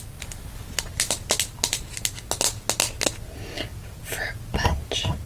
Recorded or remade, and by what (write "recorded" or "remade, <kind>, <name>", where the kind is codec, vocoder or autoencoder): recorded